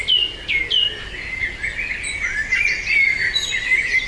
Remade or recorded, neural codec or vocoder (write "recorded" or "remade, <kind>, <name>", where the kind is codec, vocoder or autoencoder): recorded